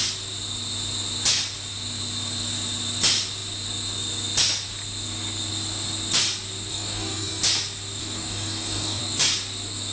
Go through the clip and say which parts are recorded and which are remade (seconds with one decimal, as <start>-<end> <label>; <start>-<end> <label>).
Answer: 0.0-6.7 recorded; 6.7-7.4 remade; 7.4-8.0 recorded; 8.0-9.0 remade; 9.0-9.9 recorded